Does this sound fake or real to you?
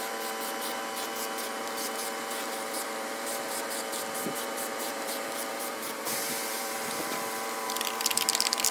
fake